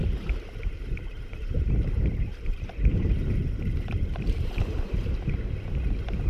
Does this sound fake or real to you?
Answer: fake